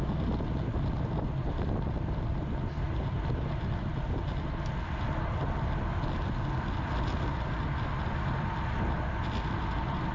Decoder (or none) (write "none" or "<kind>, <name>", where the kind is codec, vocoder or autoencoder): none